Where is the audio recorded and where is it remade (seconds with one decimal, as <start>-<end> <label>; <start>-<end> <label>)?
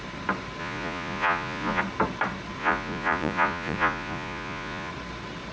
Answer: 0.0-0.6 recorded; 0.6-1.8 remade; 1.8-2.6 recorded; 2.6-4.9 remade; 4.9-5.5 recorded